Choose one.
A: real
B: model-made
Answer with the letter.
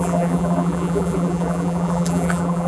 B